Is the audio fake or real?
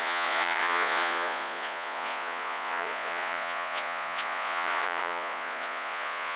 fake